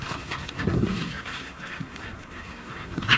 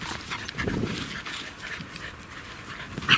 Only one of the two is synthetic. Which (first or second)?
first